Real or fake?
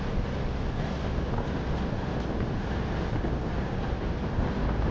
real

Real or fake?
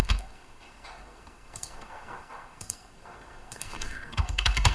fake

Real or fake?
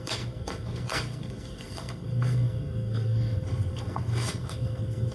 fake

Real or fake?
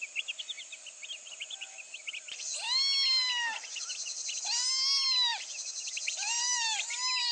real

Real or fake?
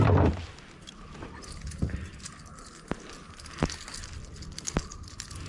real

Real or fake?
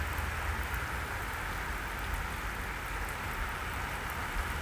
real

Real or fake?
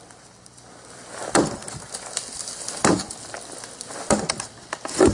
real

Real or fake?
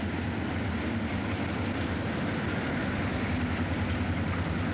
real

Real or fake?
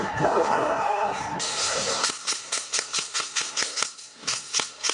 fake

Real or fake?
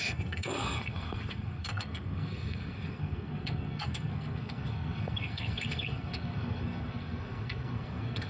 fake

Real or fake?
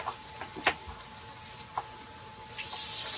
real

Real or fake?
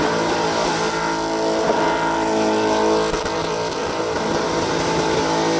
real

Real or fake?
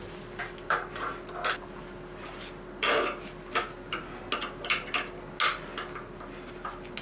real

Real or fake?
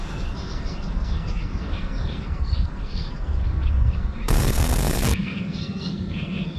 fake